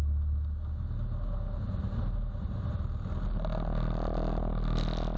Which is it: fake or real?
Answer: real